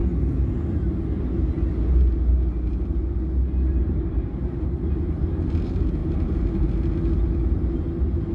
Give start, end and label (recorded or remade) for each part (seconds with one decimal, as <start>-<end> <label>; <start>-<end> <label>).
0.0-3.8 recorded; 3.8-5.2 remade; 5.2-6.0 recorded; 6.0-6.7 remade; 6.7-8.3 recorded